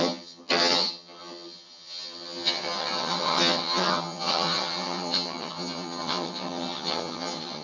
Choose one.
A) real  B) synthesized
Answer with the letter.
B